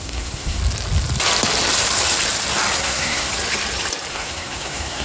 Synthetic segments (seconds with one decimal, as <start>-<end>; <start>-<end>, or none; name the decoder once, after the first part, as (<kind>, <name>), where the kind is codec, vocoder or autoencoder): 0.0-0.6 (codec, SNAC); 2.8-3.3; 4.1-5.0